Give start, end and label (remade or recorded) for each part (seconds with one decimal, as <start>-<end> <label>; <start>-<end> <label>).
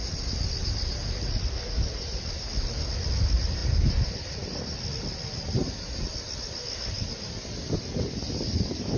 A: 0.0-9.0 recorded